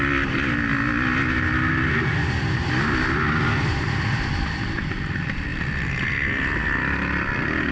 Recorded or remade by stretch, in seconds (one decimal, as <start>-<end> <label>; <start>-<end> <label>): 0.0-7.7 recorded